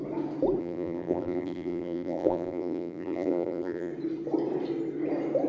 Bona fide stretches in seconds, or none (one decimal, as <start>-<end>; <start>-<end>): 0.0-0.6; 3.9-5.5